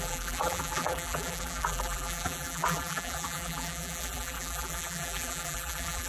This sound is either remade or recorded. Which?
remade